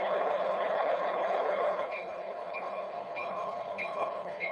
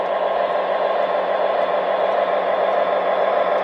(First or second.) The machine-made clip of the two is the first